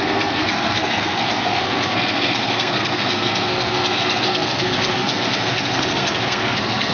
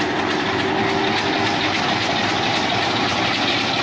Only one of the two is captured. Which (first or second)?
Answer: second